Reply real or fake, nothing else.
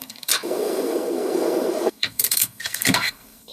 fake